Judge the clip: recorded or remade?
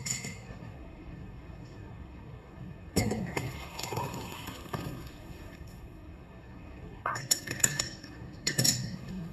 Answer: remade